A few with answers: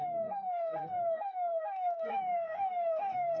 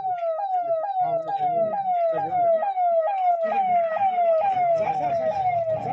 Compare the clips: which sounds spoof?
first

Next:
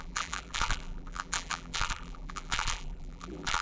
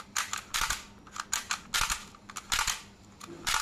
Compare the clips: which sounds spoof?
first